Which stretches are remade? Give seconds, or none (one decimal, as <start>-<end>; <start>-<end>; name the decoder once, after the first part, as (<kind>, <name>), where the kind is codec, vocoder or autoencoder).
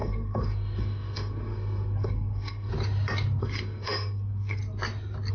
0.0-2.7 (codec, SNAC); 3.4-4.6